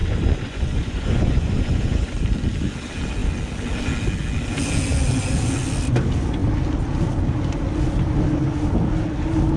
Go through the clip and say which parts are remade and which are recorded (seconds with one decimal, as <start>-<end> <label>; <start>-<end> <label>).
0.0-2.2 remade; 2.2-9.6 recorded